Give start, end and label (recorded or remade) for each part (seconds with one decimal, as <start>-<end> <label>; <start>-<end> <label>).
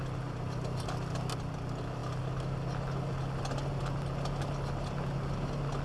0.0-5.8 recorded